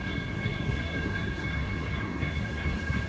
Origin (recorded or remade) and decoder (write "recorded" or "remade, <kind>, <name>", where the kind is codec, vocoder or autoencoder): remade, codec, SNAC